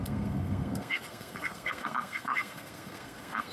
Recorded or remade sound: remade